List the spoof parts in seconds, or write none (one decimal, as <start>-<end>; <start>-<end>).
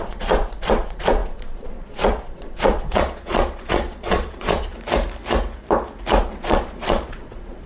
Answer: 0.0-4.7; 6.2-7.7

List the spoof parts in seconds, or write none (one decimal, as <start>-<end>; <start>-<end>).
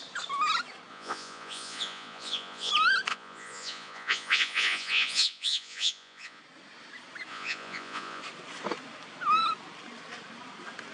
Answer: 0.9-2.7; 3.1-6.4; 7.3-8.2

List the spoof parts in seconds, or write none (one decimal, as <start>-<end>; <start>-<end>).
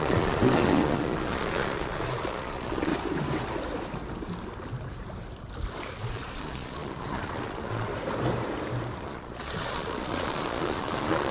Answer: 0.0-2.9; 6.0-7.9; 9.0-11.3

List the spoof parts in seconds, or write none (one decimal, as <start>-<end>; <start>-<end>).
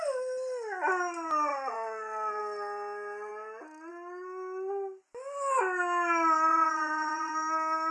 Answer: 1.5-2.4; 6.5-7.3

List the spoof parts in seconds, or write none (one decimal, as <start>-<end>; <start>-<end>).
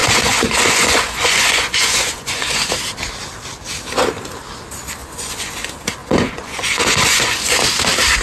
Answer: 0.0-2.7; 5.0-5.5; 6.0-7.6